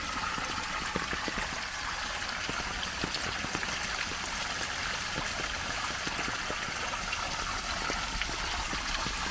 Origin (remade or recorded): recorded